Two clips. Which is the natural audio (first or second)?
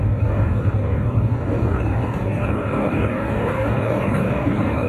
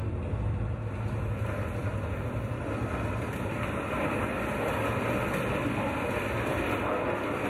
second